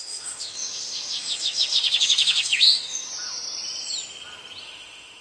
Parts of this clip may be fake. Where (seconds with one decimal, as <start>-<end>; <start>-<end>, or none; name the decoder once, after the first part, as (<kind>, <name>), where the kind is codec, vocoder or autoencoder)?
0.0-3.1 (autoencoder, DAC-VAE); 4.6-5.2